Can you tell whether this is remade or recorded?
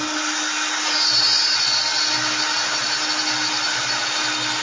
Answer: recorded